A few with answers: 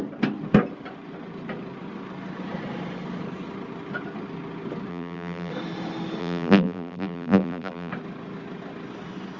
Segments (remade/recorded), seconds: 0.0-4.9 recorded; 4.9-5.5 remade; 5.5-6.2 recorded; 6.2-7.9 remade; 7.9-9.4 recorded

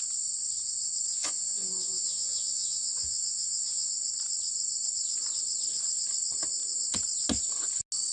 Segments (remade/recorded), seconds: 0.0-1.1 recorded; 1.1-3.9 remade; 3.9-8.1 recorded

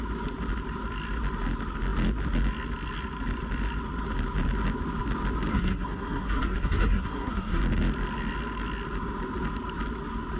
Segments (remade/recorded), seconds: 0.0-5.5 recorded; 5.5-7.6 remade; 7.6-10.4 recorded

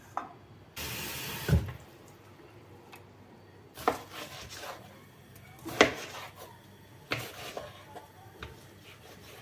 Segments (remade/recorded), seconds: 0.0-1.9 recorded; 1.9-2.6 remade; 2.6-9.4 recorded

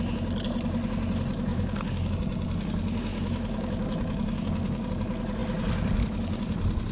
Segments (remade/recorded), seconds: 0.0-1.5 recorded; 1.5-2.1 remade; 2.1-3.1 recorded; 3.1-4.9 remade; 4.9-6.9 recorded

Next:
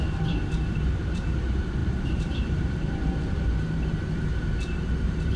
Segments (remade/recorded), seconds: 0.0-5.4 remade

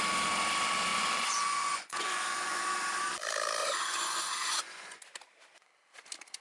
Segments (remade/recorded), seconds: 0.0-0.9 recorded; 0.9-2.6 remade; 2.6-3.6 recorded; 3.6-5.0 remade; 5.0-6.4 recorded

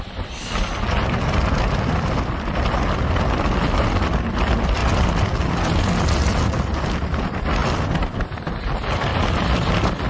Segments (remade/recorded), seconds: 0.0-10.1 recorded